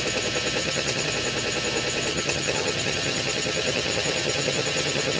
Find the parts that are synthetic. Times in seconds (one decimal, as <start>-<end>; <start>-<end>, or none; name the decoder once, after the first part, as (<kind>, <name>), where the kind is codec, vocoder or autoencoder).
0.6-1.1 (vocoder, HiFi-GAN); 2.1-5.2